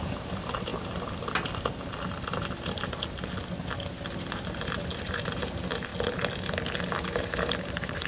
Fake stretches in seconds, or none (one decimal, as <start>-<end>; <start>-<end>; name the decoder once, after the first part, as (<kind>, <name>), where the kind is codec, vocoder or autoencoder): 0.0-0.7 (vocoder, BigVGAN v2); 4.3-5.9; 6.9-8.1